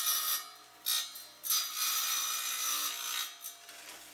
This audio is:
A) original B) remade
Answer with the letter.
A